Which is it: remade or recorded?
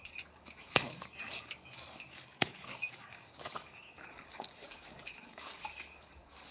remade